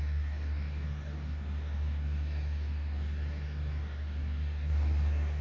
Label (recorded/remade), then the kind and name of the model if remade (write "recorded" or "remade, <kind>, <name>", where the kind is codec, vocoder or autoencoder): remade, codec, DAC